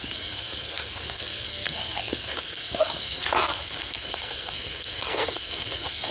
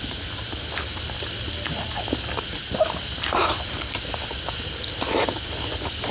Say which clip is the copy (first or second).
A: first